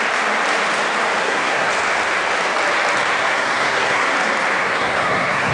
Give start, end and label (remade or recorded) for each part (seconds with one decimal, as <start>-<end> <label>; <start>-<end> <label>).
0.0-1.2 recorded; 1.2-1.7 remade; 1.7-3.2 recorded; 3.2-4.1 remade; 4.1-4.6 recorded; 4.6-5.5 remade